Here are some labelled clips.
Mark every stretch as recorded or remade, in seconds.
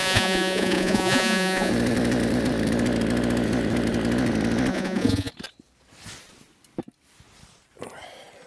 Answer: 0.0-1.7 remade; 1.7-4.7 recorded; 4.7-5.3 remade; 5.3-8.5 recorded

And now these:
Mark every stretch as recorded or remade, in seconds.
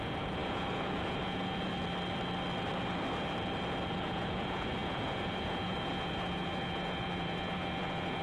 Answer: 0.0-1.7 remade; 1.7-3.9 recorded; 3.9-8.2 remade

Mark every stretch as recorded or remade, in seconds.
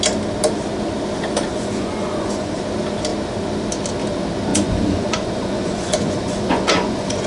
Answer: 0.0-1.5 recorded; 1.5-2.5 remade; 2.5-4.5 recorded; 4.5-7.3 remade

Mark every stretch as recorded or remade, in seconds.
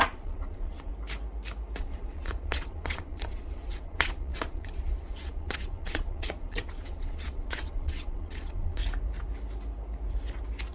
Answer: 0.0-0.9 remade; 0.9-1.8 recorded; 1.8-8.8 remade; 8.8-10.7 recorded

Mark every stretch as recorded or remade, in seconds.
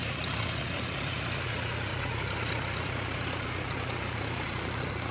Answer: 0.0-5.1 remade